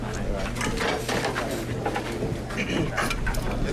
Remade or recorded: recorded